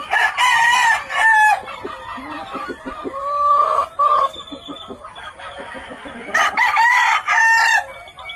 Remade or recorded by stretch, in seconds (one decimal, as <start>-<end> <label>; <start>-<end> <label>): 0.0-6.2 recorded; 6.2-7.4 remade; 7.4-8.4 recorded